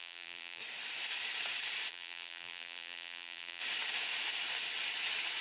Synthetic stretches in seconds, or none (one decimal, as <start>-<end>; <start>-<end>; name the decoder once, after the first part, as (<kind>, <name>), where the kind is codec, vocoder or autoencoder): 0.0-0.6 (vocoder, BigVGAN v2); 1.9-3.6